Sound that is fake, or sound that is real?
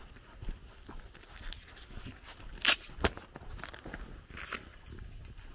real